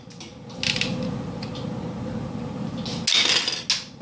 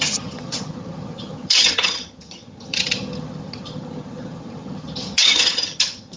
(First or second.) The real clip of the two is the first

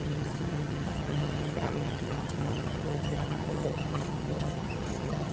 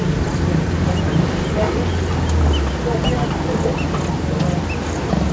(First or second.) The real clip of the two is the second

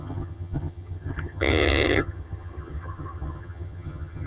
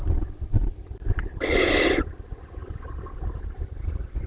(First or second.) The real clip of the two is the second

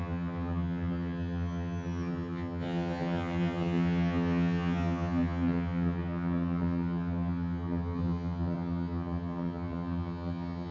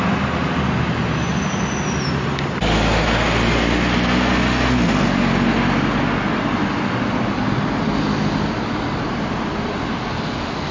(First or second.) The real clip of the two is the second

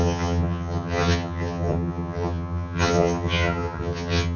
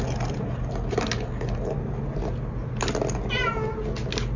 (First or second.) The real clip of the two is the second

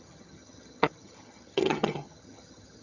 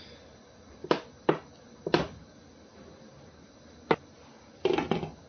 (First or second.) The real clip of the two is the second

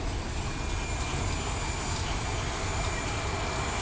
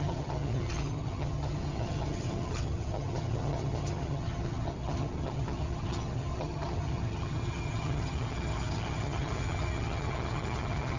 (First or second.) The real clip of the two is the first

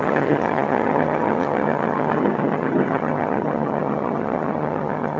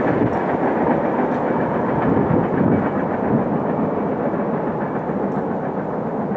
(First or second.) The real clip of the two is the second